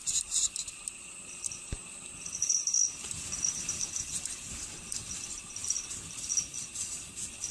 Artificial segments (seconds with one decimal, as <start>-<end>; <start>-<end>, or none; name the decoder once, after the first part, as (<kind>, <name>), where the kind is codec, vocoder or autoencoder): 0.0-7.5 (vocoder, BigVGAN v2)